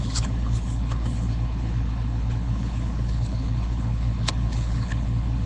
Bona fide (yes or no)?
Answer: no